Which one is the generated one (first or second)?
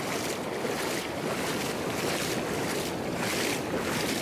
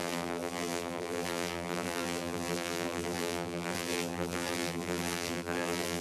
second